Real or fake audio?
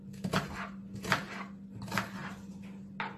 real